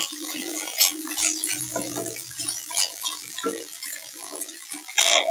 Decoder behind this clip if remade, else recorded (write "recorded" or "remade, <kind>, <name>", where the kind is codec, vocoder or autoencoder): remade, vocoder, BigVGAN v2